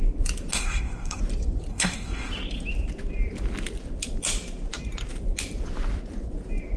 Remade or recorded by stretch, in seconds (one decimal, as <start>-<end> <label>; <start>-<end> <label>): 0.0-0.5 recorded; 0.5-1.2 remade; 1.2-1.7 recorded; 1.7-2.3 remade; 2.3-6.8 recorded